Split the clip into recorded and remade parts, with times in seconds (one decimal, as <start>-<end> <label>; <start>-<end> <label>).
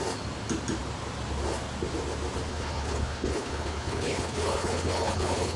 0.0-2.5 recorded; 2.5-5.6 remade